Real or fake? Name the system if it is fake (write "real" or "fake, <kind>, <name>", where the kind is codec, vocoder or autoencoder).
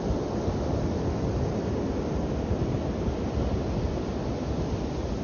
real